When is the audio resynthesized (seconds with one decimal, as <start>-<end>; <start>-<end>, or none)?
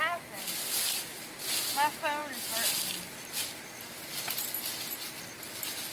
none